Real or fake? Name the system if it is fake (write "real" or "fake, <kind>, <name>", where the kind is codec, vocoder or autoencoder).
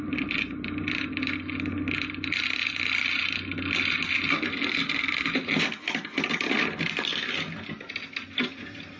real